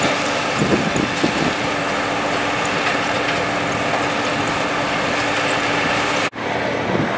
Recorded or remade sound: recorded